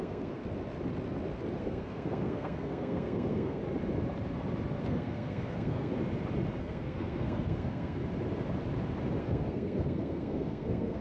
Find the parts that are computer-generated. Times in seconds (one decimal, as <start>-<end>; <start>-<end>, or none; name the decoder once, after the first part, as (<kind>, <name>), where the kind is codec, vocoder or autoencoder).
0.0-0.4 (codec, SNAC); 1.6-3.6; 4.8-5.9; 6.6-8.0; 9.2-11.0